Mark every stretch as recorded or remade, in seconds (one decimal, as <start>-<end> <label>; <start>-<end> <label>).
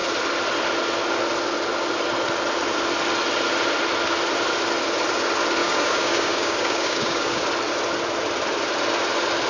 0.0-5.6 recorded; 5.6-7.4 remade; 7.4-9.5 recorded